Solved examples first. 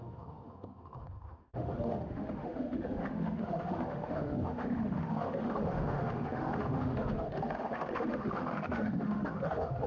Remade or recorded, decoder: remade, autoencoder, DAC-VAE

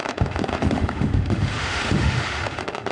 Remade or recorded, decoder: remade, autoencoder, DAC-VAE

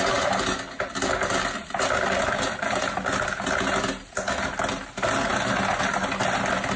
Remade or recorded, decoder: recorded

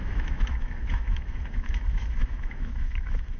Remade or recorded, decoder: remade, autoencoder, DAC-VAE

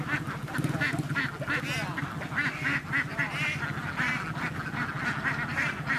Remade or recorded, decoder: recorded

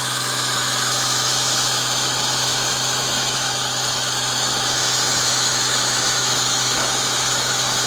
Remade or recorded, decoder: remade, autoencoder, DAC-VAE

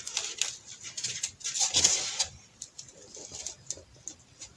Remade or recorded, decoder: recorded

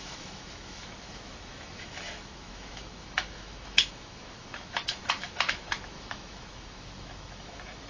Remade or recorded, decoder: remade, autoencoder, DAC-VAE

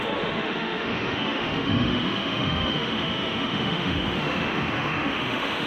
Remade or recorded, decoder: remade, autoencoder, DAC-VAE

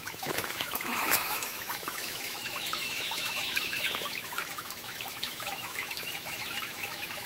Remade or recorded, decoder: remade, autoencoder, DAC-VAE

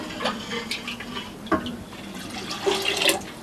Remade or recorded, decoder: recorded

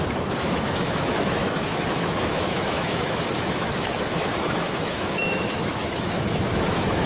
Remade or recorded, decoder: remade, autoencoder, DAC-VAE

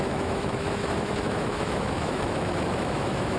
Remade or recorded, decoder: remade, autoencoder, DAC-VAE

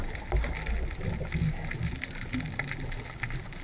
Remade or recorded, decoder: recorded